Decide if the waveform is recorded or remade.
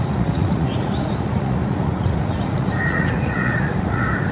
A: remade